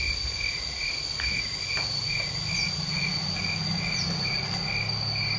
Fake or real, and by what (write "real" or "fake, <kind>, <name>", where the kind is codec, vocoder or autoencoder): real